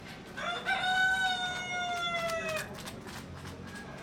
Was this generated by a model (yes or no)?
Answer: no